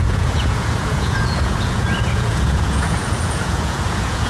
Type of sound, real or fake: fake